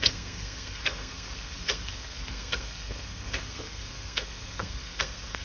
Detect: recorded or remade remade